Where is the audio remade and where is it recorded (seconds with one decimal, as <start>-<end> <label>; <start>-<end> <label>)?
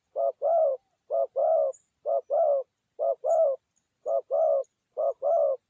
0.0-5.7 recorded